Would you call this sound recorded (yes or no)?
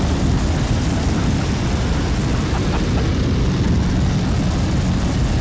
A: yes